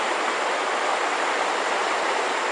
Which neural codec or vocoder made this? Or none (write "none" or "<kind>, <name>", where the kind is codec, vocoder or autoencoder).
none